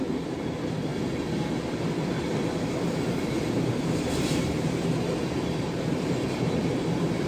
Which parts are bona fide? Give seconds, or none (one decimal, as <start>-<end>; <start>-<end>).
0.9-3.2